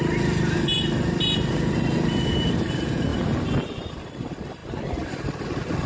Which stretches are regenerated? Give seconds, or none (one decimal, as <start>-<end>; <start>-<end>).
none